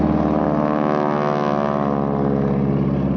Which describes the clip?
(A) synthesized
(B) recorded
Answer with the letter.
B